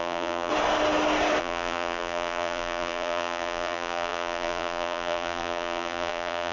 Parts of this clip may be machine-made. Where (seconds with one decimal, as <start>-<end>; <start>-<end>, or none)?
0.0-0.5; 1.4-6.5